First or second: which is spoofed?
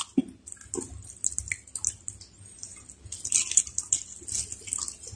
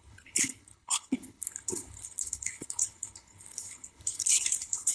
second